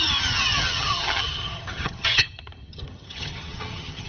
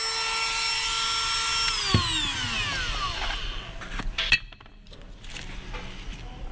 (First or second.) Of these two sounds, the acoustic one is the second